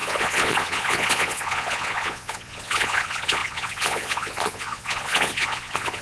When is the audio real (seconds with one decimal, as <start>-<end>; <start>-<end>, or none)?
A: none